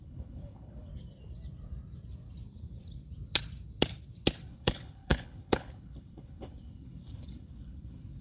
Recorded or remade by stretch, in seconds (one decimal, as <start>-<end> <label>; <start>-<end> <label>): 0.0-0.9 remade; 0.9-4.5 recorded; 4.5-8.2 remade